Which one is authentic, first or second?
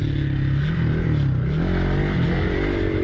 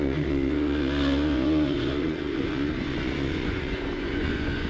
first